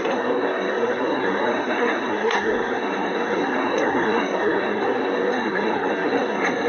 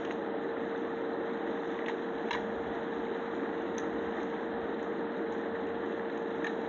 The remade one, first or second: first